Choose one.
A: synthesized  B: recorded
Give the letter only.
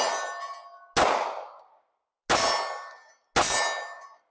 B